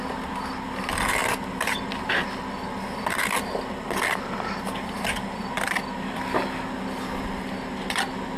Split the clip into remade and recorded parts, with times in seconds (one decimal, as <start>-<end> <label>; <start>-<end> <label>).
0.0-8.4 recorded